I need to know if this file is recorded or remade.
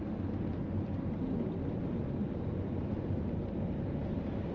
recorded